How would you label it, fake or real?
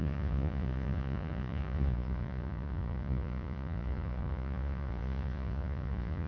fake